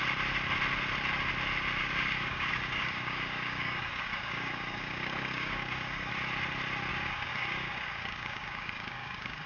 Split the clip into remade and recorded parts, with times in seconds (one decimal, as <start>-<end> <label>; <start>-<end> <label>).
0.0-1.8 recorded; 1.8-6.1 remade; 6.1-6.9 recorded; 6.9-9.5 remade